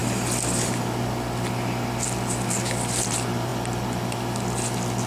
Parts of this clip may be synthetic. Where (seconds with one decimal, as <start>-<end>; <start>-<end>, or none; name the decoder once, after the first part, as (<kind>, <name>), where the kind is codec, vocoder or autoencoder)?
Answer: none